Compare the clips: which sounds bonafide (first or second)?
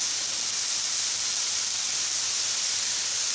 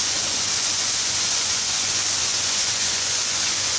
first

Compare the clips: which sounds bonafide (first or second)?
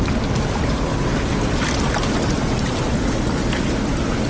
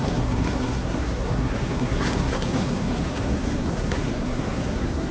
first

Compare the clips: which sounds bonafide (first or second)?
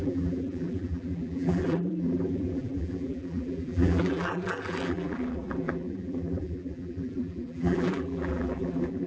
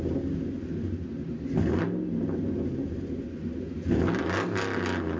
second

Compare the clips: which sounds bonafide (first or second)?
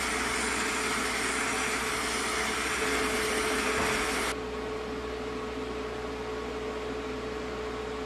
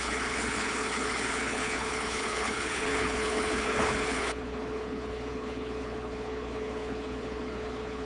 first